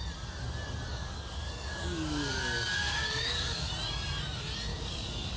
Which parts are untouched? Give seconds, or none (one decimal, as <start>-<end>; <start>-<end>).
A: 0.0-0.9; 3.7-4.7